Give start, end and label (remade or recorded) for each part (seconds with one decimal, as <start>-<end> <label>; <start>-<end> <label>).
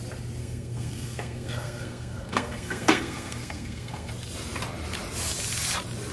0.0-0.4 recorded; 0.4-4.1 remade; 4.1-6.1 recorded